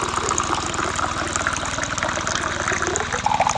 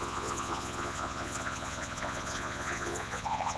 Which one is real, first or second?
first